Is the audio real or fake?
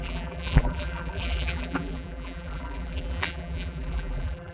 fake